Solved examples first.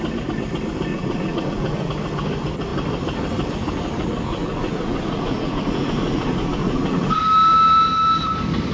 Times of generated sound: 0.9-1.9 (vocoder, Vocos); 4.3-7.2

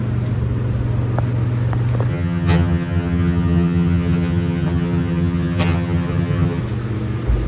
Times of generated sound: 2.1-6.6 (vocoder, HiFi-GAN)

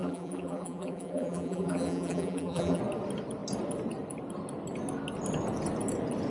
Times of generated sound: 0.0-2.8 (vocoder, BigVGAN v2)